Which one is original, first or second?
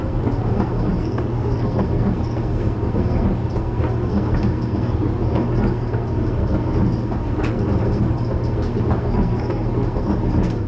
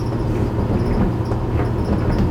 second